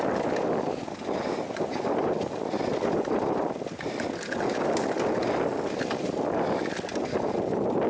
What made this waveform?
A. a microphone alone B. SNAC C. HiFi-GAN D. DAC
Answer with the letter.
A